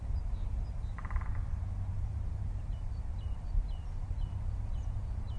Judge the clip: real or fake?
fake